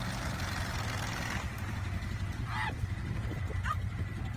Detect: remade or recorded recorded